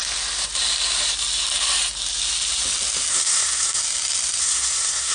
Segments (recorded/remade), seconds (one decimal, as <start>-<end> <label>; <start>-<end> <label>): 0.0-3.1 recorded; 3.1-3.8 remade; 3.8-4.4 recorded; 4.4-5.1 remade